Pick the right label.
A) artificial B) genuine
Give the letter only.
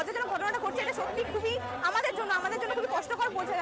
B